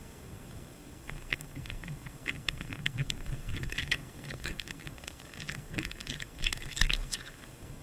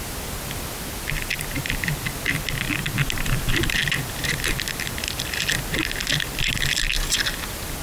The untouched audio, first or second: second